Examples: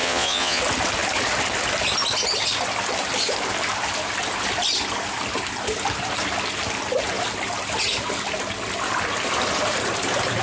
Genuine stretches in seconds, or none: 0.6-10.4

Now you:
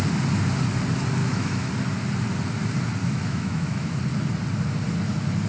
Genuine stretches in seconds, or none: 0.0-1.2; 1.7-3.0; 4.0-5.5

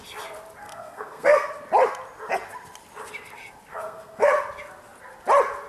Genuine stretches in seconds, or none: 0.0-0.6; 1.5-3.7; 4.3-5.7

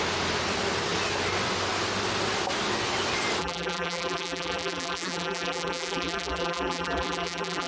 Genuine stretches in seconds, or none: 0.0-3.4

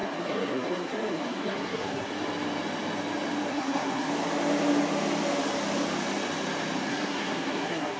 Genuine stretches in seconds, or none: 2.1-3.5; 4.1-6.9

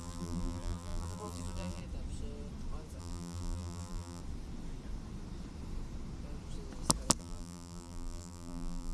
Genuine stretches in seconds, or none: 1.8-3.0; 4.2-7.2

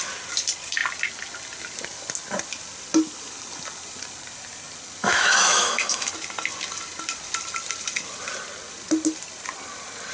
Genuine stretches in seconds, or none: 0.0-5.0; 6.1-10.1

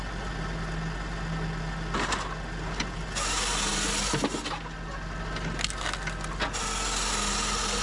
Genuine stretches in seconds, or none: 0.0-7.8